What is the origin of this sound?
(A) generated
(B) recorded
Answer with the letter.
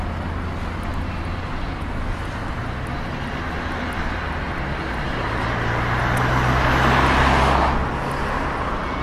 B